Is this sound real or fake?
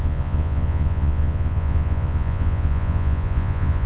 fake